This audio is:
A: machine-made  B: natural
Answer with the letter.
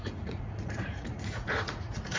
A